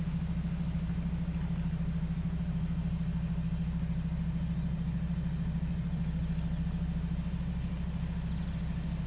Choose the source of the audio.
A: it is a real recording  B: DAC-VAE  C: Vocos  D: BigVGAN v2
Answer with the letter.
A